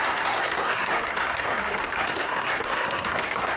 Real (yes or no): no